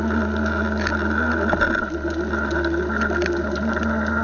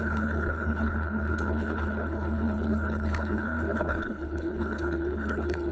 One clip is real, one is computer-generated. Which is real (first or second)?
first